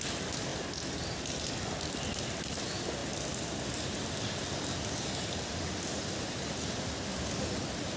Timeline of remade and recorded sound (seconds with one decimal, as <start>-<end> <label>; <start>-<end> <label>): 0.0-0.5 remade; 0.5-1.5 recorded; 1.5-3.0 remade; 3.0-5.7 recorded; 5.7-8.0 remade